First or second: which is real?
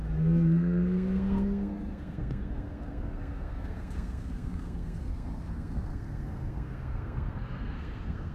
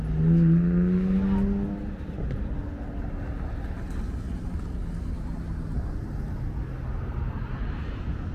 second